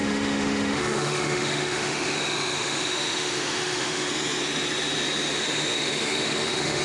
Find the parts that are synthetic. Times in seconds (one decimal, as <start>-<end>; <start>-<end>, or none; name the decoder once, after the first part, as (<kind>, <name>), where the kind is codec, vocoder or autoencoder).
0.0-4.1 (autoencoder, DAC-VAE); 5.4-6.8